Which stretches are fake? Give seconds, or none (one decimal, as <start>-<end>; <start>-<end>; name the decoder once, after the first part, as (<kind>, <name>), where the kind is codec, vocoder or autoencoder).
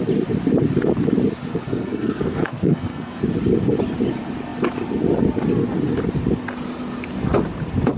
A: 1.5-3.2 (codec, SNAC)